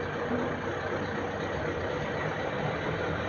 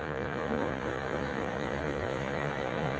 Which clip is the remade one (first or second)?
second